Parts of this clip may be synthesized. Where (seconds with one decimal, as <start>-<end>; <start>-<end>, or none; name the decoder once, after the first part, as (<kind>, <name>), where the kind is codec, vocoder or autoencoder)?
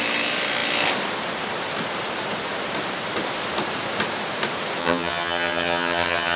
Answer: 4.8-6.4 (vocoder, HiFi-GAN)